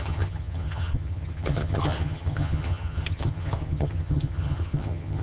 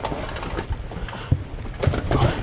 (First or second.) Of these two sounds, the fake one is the first